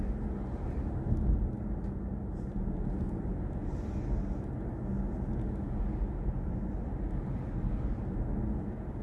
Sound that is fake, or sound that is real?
real